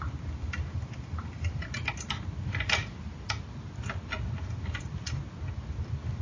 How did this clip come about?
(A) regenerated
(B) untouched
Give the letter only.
B